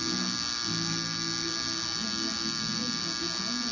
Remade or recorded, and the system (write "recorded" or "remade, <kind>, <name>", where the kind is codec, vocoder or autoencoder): recorded